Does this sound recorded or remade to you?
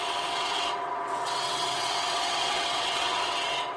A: remade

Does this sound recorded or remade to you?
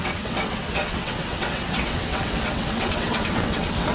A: remade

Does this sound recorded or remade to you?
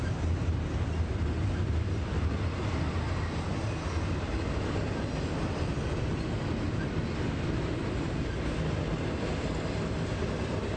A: recorded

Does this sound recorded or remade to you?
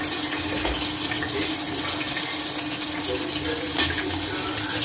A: recorded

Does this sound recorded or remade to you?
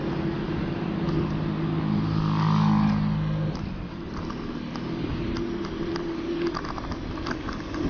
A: recorded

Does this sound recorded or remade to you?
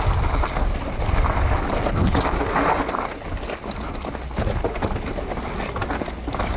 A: recorded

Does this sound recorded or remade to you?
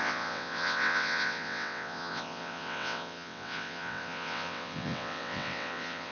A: remade